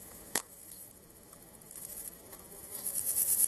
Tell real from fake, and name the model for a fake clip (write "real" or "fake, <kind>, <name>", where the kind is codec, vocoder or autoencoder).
fake, autoencoder, DAC-VAE